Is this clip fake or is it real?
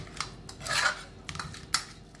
real